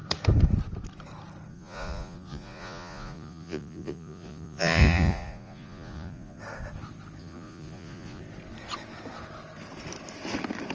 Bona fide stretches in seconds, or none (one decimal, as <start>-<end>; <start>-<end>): 0.0-1.5; 6.4-7.2; 8.2-10.7